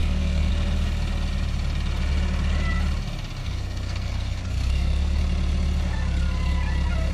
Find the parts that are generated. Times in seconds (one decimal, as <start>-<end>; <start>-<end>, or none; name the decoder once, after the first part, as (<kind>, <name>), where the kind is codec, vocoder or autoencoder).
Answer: 0.0-0.5 (codec, SNAC); 3.4-5.2